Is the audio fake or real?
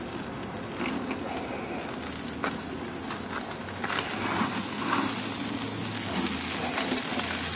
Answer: real